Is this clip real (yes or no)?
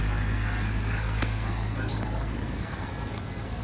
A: no